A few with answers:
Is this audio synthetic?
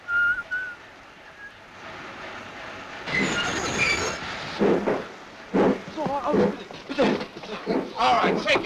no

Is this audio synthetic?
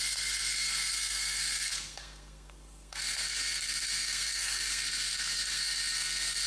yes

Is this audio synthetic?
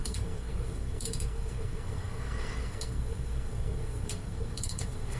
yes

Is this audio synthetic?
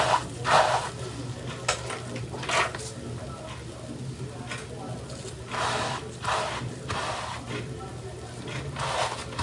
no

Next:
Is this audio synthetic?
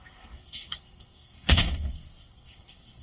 yes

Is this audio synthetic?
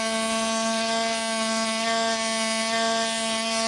no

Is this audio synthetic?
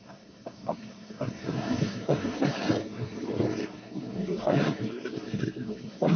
yes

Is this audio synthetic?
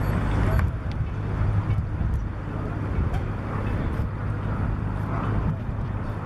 no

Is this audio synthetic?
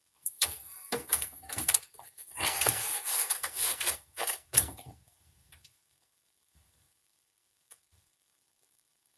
yes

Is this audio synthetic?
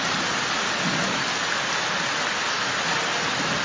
no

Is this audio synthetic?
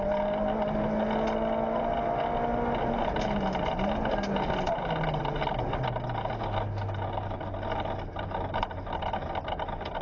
no